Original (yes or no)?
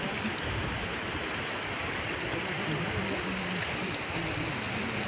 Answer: yes